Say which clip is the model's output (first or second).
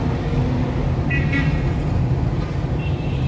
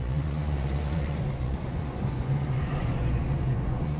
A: second